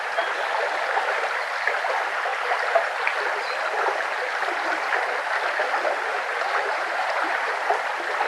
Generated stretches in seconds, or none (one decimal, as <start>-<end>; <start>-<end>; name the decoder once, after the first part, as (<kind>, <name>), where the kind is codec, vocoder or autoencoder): 6.1-7.7 (vocoder, BigVGAN v2)